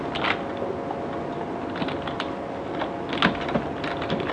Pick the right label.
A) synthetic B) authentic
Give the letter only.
B